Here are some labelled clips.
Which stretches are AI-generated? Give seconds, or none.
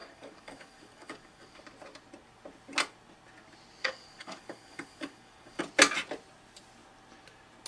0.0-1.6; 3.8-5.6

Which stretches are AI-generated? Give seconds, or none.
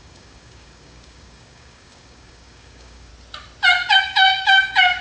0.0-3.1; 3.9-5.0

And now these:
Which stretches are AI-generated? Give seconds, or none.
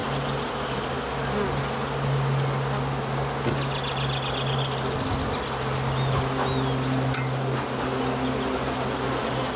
none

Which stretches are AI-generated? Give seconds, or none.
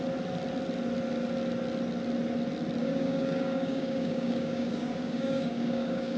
2.8-6.2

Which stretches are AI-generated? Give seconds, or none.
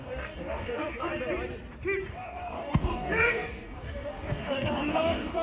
0.0-1.1; 2.0-5.4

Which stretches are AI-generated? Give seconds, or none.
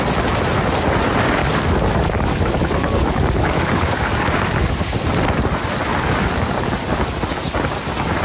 1.4-4.7; 5.9-6.7